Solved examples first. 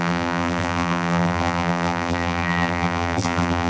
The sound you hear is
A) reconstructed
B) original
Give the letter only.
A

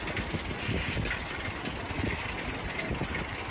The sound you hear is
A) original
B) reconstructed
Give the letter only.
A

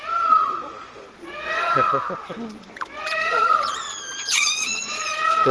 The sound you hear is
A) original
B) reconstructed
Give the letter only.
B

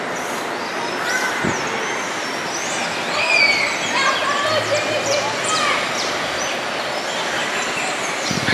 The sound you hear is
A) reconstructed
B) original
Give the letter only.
B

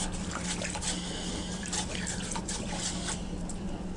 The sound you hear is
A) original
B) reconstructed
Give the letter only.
A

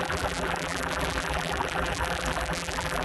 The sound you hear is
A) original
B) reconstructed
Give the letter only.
B